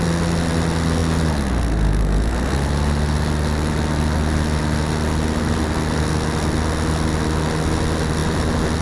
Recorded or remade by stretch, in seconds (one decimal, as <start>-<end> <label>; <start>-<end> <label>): 0.0-8.8 recorded